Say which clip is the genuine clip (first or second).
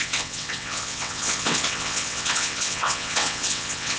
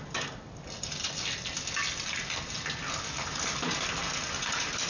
second